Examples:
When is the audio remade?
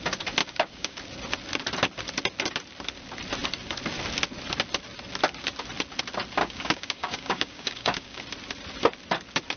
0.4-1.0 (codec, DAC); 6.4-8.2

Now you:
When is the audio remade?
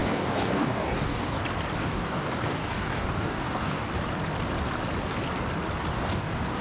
0.0-1.4 (codec, DAC); 1.8-3.9; 5.9-6.6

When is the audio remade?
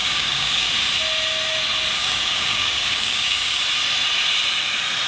0.0-0.7 (codec, DAC); 2.0-3.6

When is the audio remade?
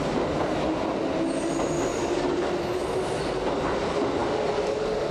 1.9-2.4 (codec, DAC); 4.2-5.1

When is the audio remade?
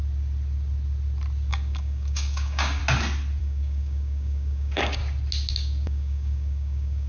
1.5-2.8 (codec, DAC); 3.4-5.0; 5.5-7.1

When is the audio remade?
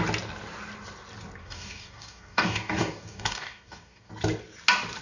1.4-4.1 (codec, DAC)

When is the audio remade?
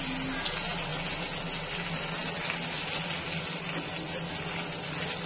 none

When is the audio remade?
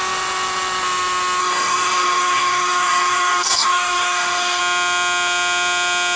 1.4-4.6 (codec, DAC)